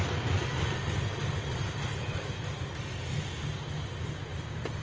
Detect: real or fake real